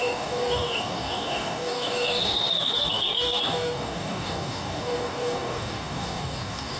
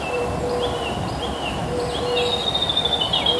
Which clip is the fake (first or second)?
first